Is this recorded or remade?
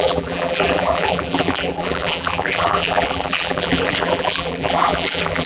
remade